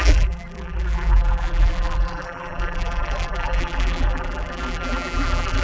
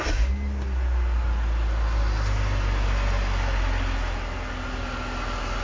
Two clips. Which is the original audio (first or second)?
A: second